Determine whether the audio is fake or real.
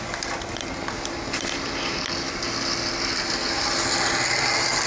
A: real